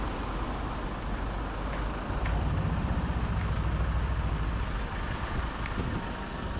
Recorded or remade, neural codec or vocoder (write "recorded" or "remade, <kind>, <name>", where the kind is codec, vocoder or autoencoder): recorded